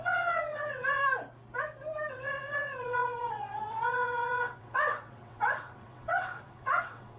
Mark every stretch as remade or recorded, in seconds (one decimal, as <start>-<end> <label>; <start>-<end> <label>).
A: 0.0-1.0 remade; 1.0-2.1 recorded; 2.1-7.2 remade